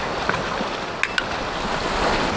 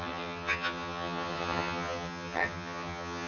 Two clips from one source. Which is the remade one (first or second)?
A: second